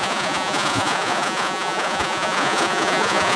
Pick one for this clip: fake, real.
fake